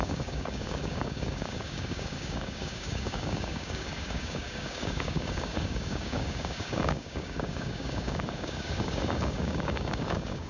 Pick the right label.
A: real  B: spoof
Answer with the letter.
B